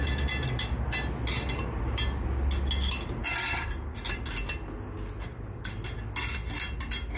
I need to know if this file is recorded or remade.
recorded